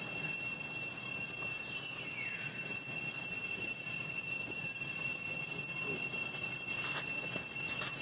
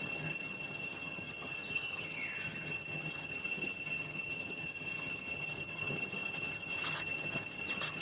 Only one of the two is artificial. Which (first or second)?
second